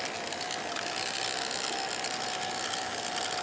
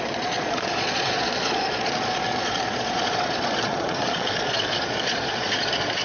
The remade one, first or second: second